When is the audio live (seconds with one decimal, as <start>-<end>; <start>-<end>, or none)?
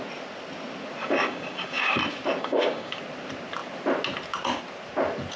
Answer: 0.0-1.0; 2.0-2.4; 3.0-5.4